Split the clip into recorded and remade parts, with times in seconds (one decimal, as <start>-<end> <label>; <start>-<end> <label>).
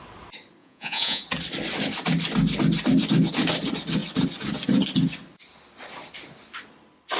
0.0-0.6 recorded; 0.6-1.2 remade; 1.2-7.2 recorded